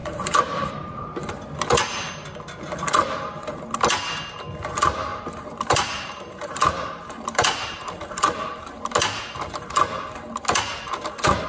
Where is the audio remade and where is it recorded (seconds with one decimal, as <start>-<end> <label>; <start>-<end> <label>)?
0.0-1.3 remade; 1.3-5.1 recorded; 5.1-8.9 remade; 8.9-11.5 recorded